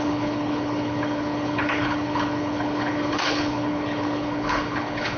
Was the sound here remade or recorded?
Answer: remade